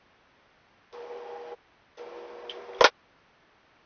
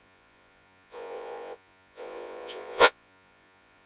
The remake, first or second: second